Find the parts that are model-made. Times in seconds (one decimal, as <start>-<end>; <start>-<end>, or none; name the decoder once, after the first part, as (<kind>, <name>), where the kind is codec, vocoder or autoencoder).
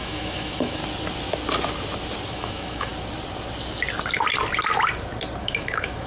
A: 0.0-0.8 (autoencoder, DAC-VAE); 2.3-2.9; 5.4-6.1